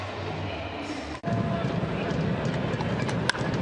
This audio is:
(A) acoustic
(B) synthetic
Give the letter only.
A